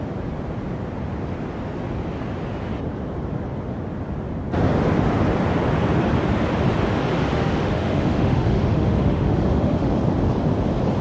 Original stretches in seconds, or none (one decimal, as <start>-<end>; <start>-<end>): 0.0-7.3; 9.9-11.0